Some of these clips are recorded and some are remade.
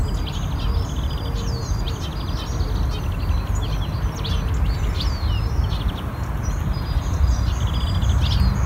recorded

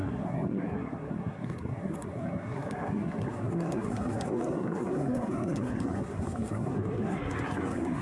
remade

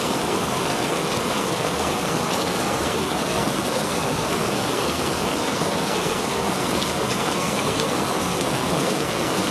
remade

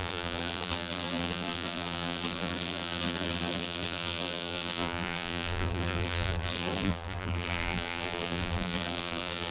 remade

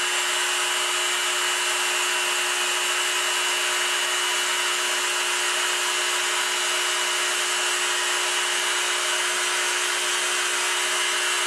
recorded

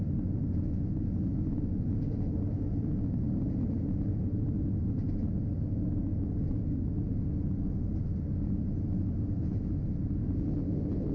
recorded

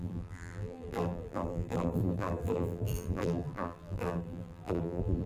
remade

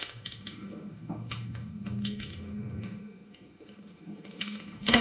remade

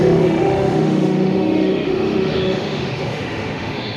remade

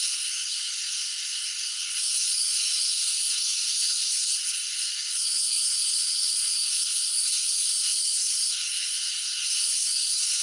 remade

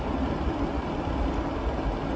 recorded